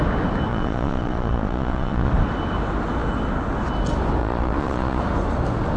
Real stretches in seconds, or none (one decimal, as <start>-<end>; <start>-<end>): 0.0-0.5; 2.1-4.2; 5.0-5.8